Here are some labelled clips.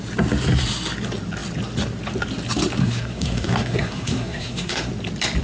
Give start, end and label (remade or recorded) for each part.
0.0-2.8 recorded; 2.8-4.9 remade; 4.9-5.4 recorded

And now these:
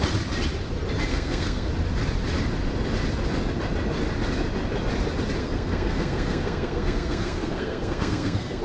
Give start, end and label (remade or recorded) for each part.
0.0-1.1 recorded; 1.1-1.7 remade; 1.7-5.4 recorded; 5.4-8.6 remade

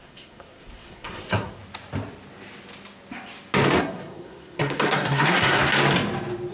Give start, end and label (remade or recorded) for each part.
0.0-1.6 remade; 1.6-3.8 recorded; 3.8-5.6 remade; 5.6-6.5 recorded